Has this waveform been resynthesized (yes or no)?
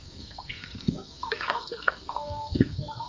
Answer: yes